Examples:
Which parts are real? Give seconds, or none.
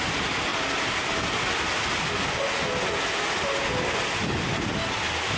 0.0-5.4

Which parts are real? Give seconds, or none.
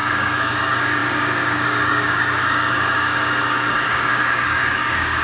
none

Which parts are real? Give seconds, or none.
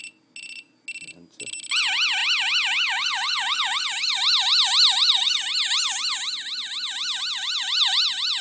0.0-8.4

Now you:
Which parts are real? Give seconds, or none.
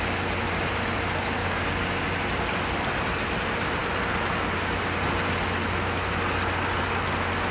0.0-1.4; 2.1-7.5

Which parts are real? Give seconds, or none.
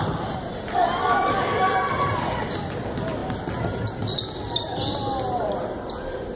0.0-1.0; 1.7-6.4